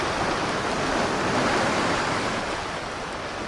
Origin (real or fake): real